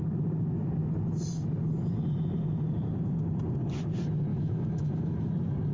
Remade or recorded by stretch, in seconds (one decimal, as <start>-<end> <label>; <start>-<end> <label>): 0.0-4.3 recorded; 4.3-5.3 remade; 5.3-5.7 recorded